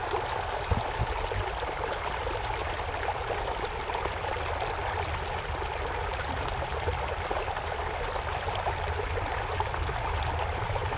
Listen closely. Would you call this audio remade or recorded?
recorded